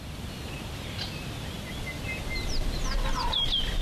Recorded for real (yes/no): yes